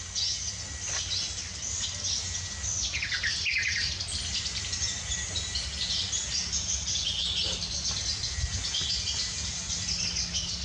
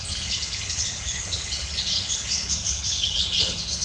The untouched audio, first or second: first